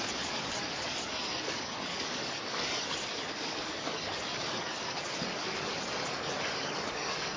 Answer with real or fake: fake